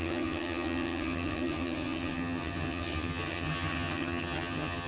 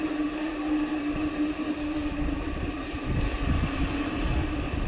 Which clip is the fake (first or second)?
first